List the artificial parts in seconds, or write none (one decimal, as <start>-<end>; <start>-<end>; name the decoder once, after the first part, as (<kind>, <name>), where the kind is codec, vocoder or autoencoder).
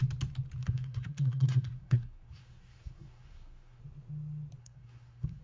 0.6-3.8 (codec, SNAC); 4.6-5.4